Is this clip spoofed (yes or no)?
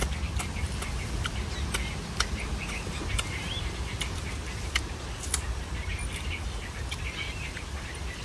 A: no